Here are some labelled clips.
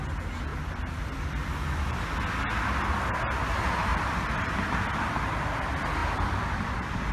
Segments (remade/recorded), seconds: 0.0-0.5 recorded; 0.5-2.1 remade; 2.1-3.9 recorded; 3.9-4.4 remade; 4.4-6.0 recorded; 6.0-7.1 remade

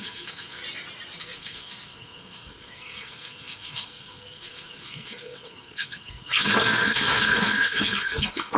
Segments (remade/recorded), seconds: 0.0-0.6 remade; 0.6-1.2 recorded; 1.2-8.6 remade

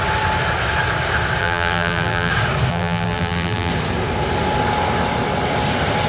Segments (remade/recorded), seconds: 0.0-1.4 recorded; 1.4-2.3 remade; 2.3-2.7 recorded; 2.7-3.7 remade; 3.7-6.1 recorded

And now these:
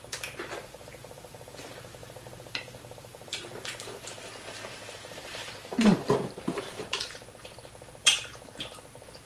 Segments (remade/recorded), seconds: 0.0-4.3 remade; 4.3-4.9 recorded; 4.9-9.3 remade

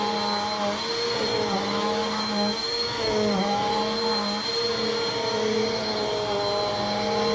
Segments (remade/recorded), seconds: 0.0-1.3 recorded; 1.3-3.7 remade; 3.7-7.3 recorded